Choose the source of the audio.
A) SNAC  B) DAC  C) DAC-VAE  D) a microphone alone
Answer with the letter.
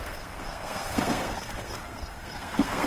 A